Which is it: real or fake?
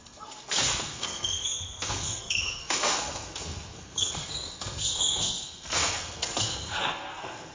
fake